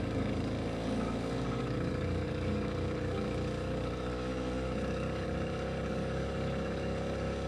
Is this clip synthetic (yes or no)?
yes